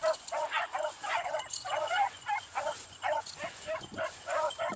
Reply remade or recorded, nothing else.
remade